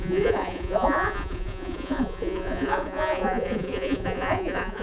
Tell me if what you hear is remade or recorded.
remade